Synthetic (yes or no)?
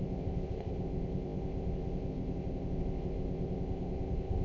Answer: yes